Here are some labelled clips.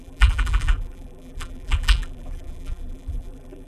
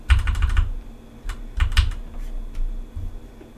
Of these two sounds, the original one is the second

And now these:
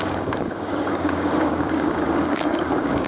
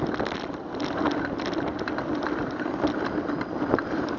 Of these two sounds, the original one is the second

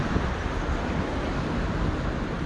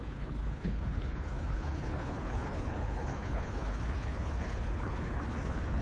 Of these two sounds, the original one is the first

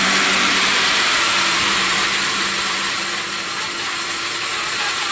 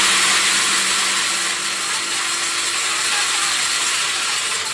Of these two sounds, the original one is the second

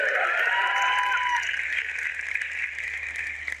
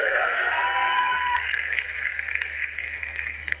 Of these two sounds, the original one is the first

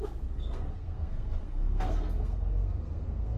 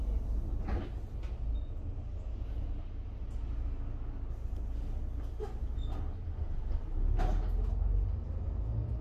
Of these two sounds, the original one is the second